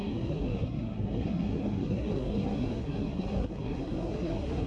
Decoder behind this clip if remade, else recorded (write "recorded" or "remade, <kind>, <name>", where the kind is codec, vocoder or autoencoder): remade, codec, SNAC